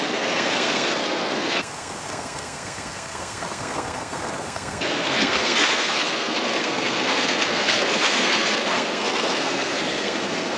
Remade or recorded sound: remade